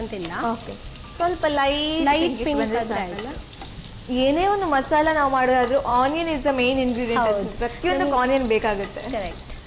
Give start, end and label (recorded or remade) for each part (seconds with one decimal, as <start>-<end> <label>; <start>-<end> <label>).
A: 0.0-9.7 recorded